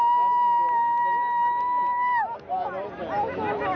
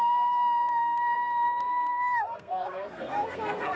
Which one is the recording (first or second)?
first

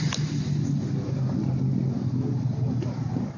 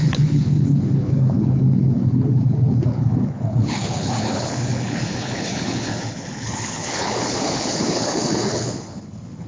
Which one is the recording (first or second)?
first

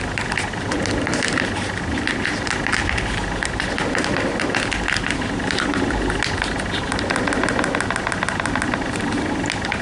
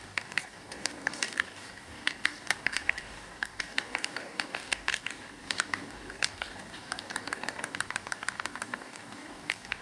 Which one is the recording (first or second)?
first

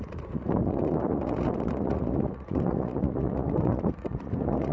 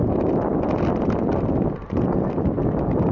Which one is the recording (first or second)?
second